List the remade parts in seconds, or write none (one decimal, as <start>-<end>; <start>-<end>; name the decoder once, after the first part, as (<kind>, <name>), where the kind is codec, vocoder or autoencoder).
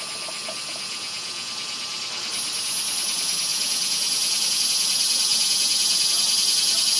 0.7-1.5 (vocoder, Vocos); 3.5-4.6; 5.3-6.1